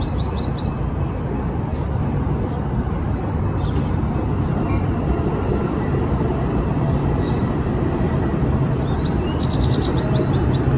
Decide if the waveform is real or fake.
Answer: real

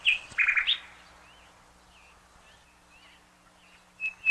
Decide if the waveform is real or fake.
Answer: real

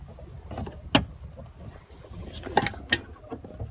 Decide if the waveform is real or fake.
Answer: real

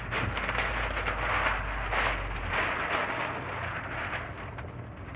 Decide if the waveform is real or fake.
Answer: real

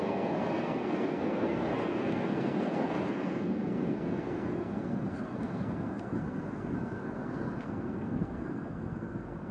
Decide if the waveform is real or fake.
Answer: fake